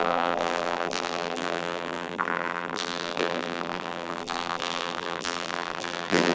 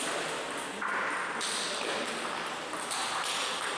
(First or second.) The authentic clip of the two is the second